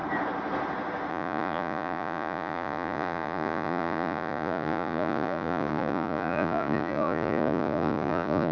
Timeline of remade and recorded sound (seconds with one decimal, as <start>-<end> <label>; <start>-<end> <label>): 0.0-1.1 recorded; 1.1-8.5 remade